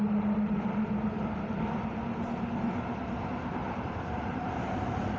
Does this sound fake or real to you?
fake